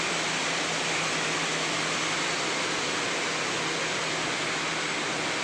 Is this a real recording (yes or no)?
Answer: yes